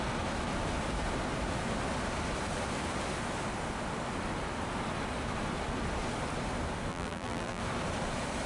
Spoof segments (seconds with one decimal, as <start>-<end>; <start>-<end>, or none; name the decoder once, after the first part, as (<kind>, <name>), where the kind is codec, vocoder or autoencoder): 6.9-7.6 (vocoder, BigVGAN v2)